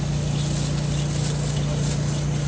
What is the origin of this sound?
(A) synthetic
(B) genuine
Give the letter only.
B